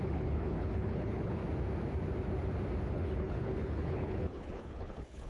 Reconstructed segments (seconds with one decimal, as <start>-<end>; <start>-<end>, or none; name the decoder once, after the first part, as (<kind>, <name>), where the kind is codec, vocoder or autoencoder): 0.0-1.4 (codec, HILCodec); 2.9-5.3